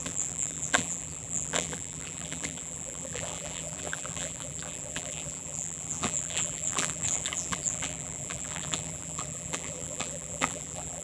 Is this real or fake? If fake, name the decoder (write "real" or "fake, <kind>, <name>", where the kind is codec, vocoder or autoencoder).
fake, vocoder, BigVGAN v2